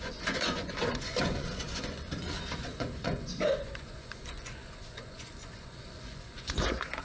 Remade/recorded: remade